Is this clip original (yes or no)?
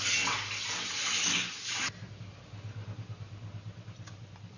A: yes